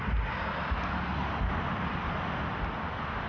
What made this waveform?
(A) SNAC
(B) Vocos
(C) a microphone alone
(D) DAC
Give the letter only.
C